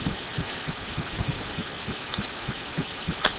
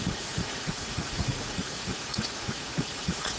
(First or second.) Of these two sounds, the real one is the first